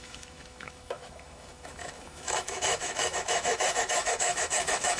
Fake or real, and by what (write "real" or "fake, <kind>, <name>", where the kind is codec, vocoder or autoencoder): fake, autoencoder, DAC-VAE